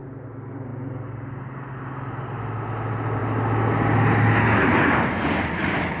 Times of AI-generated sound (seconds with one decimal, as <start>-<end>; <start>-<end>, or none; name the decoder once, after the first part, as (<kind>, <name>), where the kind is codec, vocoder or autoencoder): none